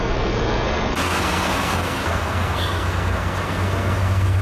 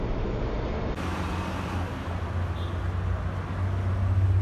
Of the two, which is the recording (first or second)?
second